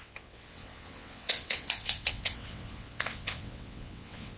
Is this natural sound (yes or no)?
no